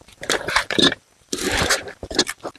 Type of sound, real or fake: fake